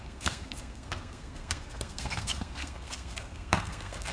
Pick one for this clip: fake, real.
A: fake